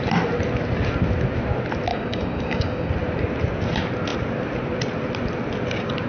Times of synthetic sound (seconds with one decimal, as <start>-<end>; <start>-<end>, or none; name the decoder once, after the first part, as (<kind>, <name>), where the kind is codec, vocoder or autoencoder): 1.9-2.9 (codec, DAC)